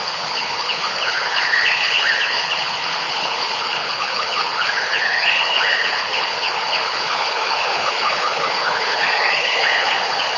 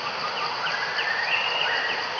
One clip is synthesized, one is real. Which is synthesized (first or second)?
first